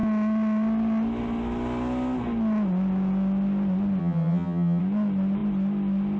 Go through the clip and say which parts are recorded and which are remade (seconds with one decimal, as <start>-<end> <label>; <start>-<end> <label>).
0.0-4.0 recorded; 4.0-4.8 remade; 4.8-6.2 recorded